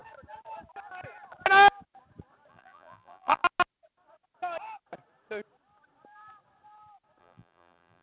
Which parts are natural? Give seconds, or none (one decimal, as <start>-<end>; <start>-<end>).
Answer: 0.0-2.5; 3.4-7.2